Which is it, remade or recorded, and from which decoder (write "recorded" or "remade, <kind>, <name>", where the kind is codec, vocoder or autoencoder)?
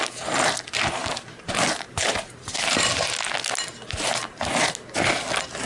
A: recorded